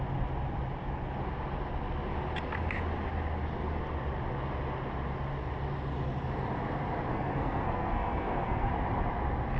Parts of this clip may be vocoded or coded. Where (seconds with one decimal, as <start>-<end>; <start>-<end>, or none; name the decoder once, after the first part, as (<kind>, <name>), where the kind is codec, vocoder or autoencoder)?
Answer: 7.1-8.7 (codec, SNAC)